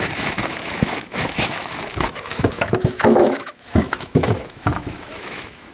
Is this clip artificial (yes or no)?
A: yes